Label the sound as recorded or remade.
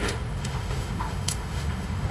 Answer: remade